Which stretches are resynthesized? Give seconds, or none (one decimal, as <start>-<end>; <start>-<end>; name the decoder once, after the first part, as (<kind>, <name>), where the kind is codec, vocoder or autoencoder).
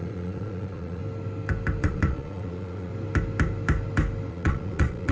0.0-1.0 (vocoder, Vocos); 1.8-2.9; 4.3-5.1